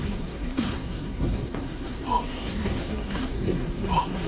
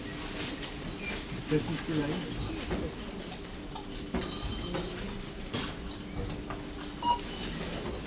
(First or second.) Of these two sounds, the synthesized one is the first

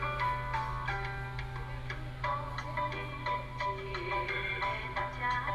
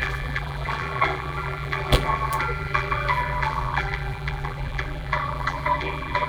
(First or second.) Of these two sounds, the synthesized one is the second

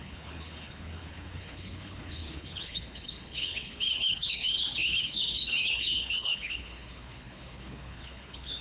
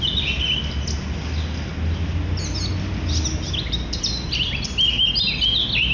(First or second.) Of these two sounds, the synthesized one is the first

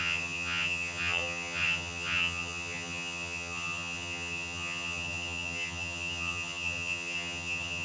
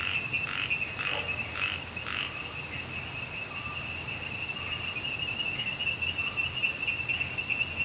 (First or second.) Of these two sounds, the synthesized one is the first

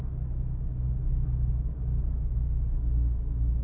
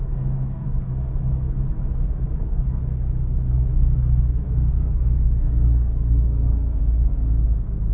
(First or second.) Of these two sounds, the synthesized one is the second